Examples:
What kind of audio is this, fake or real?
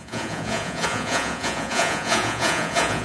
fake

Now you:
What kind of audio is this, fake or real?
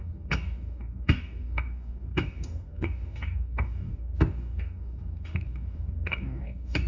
fake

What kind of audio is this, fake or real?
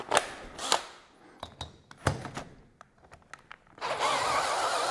real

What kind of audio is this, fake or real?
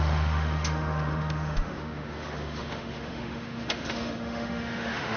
fake